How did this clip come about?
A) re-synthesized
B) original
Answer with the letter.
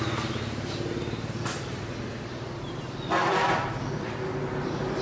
A